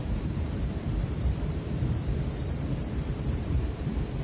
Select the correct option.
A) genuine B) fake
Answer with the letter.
B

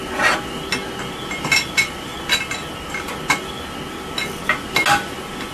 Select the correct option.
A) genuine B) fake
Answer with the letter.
A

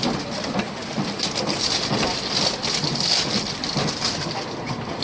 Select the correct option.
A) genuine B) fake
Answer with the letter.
A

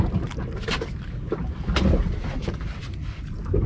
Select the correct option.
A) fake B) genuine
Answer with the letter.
B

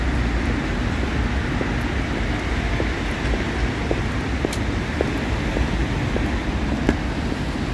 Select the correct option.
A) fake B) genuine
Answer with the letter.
B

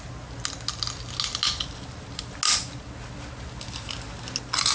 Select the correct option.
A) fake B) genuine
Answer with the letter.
B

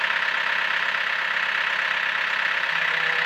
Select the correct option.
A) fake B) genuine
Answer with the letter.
B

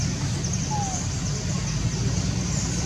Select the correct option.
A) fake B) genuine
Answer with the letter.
B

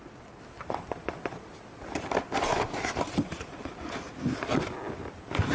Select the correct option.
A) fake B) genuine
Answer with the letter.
B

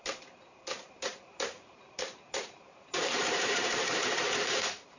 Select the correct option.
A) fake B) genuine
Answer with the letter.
A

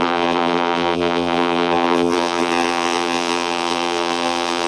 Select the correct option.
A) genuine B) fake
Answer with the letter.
B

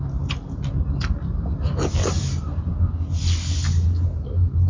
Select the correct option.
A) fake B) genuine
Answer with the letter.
B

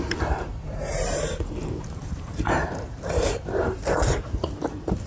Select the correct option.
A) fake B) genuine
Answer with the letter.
A